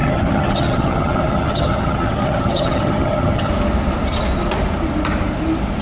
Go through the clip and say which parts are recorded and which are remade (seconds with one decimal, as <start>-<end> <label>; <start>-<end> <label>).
0.0-3.5 remade; 3.5-5.8 recorded